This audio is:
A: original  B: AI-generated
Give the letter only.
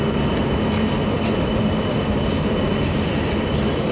A